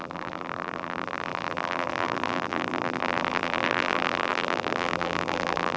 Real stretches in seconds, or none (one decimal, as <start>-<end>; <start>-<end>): none

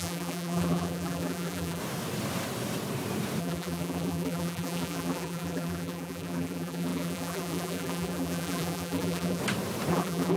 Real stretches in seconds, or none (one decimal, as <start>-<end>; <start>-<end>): 1.8-3.4; 9.4-9.9